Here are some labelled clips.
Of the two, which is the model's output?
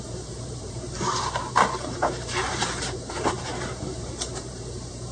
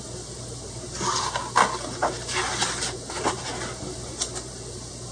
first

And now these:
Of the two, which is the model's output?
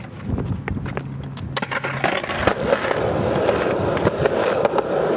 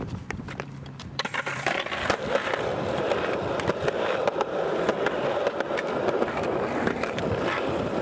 second